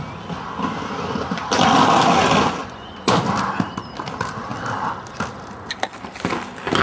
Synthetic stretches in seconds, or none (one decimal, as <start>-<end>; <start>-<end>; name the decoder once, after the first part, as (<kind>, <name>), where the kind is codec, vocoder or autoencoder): 2.6-3.1 (vocoder, Vocos)